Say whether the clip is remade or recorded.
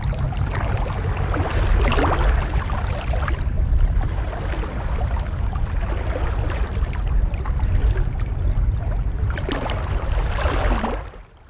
recorded